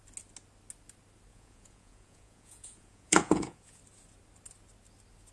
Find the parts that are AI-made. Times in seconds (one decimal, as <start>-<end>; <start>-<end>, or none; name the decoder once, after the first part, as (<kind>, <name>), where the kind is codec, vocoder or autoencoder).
1.3-3.8 (vocoder, Vocos)